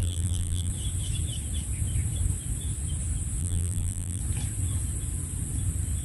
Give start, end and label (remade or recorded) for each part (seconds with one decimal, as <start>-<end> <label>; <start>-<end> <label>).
0.0-0.7 remade; 0.7-3.4 recorded; 3.4-4.2 remade; 4.2-6.0 recorded